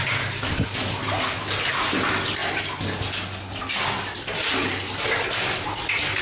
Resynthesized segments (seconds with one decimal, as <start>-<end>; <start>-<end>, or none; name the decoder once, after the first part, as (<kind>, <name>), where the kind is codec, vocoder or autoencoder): none